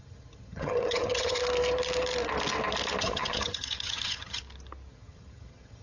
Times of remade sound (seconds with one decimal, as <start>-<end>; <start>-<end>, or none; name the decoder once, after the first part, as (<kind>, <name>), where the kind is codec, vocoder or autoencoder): 0.0-1.4 (vocoder, HiFi-GAN); 3.0-4.4; 4.9-5.8